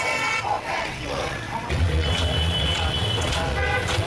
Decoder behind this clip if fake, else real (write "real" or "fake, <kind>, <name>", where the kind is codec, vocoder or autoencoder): fake, vocoder, WaveNeXt